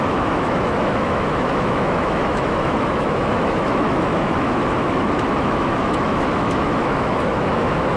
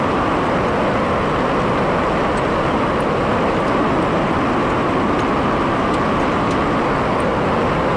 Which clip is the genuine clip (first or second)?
second